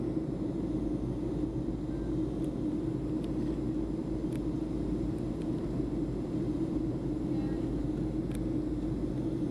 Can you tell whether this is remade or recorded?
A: recorded